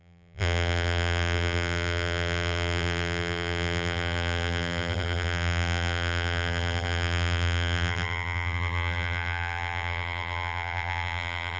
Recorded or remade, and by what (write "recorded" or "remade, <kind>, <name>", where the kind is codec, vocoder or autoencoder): remade, vocoder, BigVGAN v2